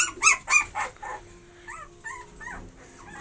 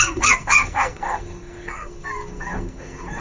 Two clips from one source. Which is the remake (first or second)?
second